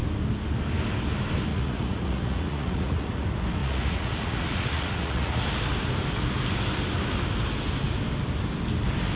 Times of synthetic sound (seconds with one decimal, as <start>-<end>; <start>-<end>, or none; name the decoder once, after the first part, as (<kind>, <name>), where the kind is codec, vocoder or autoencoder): 1.5-3.2 (vocoder, Vocos); 3.6-5.4